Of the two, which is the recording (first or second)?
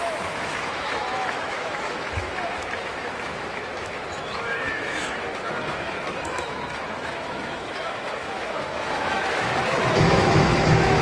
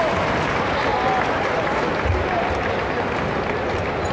second